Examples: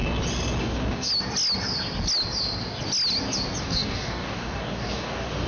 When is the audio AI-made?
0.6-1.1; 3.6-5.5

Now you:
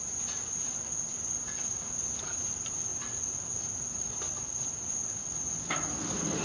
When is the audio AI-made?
none

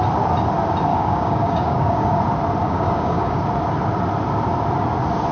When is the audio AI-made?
0.9-2.2; 2.6-3.4

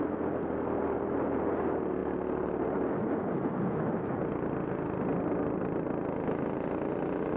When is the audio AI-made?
none

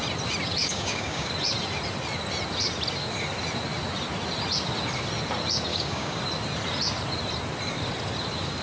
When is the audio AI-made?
0.6-1.3; 5.7-6.2